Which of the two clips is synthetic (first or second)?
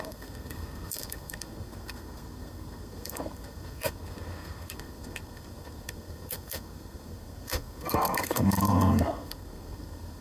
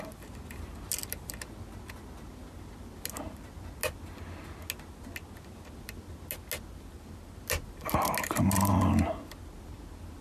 first